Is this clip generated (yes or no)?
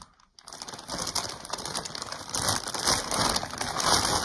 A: no